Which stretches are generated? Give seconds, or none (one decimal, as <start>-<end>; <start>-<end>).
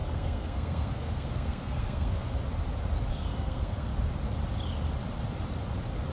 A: 0.0-2.3; 3.1-3.9